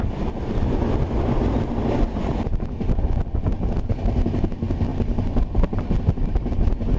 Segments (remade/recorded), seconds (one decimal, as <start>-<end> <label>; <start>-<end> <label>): 0.0-7.0 recorded